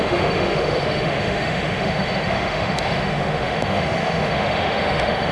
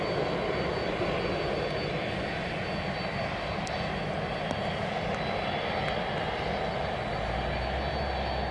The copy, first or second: first